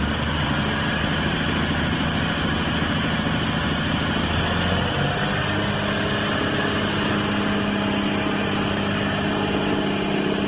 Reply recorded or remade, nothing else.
recorded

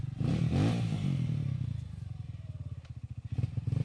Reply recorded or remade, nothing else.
recorded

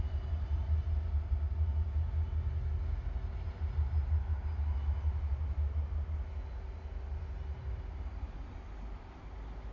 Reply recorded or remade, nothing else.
recorded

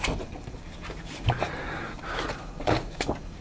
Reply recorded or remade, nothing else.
remade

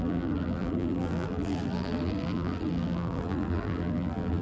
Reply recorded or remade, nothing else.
remade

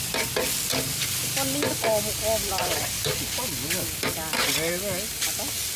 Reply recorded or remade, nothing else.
recorded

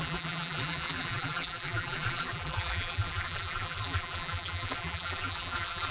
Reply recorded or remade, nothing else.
remade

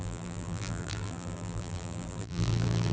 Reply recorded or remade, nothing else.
remade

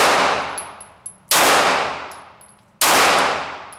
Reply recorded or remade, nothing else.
recorded